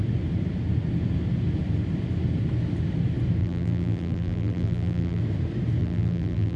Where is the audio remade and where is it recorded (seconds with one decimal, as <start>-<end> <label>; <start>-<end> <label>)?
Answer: 0.0-3.4 recorded; 3.4-5.2 remade; 5.2-5.8 recorded; 5.8-6.6 remade